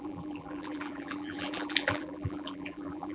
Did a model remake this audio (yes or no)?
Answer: yes